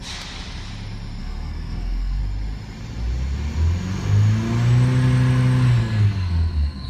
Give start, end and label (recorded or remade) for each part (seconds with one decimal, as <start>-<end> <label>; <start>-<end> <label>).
0.0-1.2 recorded; 1.2-2.2 remade; 2.2-5.8 recorded; 5.8-6.9 remade